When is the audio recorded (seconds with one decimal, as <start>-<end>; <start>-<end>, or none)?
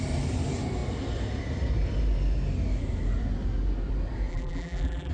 0.0-4.3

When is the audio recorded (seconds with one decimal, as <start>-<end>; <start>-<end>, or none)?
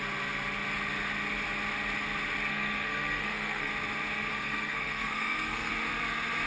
0.0-2.5; 3.7-4.3; 5.7-6.5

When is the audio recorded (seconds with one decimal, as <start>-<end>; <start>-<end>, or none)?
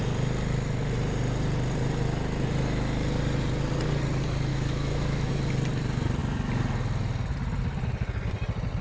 0.0-4.5; 5.3-8.8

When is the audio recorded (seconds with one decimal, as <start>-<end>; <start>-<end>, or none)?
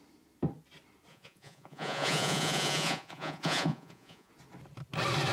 0.0-1.1; 4.3-5.3